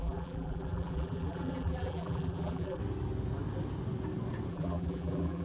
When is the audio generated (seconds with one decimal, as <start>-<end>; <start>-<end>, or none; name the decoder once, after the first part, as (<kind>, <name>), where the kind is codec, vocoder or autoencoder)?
0.0-2.8 (vocoder, BigVGAN v2); 4.5-5.4